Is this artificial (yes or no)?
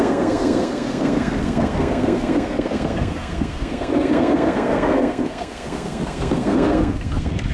yes